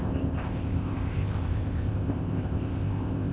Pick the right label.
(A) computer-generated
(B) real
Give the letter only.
A